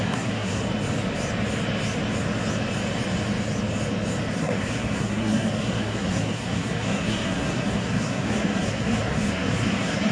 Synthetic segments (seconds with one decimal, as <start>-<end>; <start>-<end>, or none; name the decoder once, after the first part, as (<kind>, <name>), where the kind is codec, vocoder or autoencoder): 0.0-0.6 (codec, SNAC); 4.3-10.1